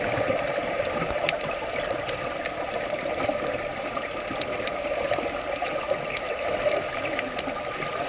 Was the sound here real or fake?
real